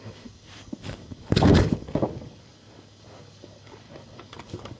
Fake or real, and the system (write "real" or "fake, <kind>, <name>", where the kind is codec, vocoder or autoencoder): fake, codec, DAC